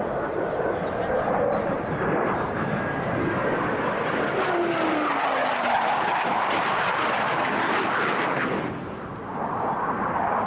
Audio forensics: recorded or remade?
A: recorded